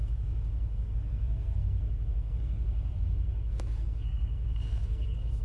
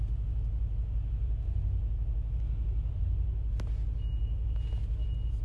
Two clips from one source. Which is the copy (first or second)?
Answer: first